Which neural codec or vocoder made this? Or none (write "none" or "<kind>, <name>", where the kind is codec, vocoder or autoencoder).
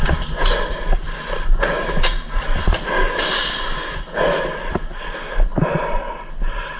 none